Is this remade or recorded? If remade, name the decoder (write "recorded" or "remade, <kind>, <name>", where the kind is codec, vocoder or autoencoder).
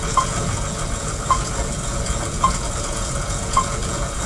remade, vocoder, Vocos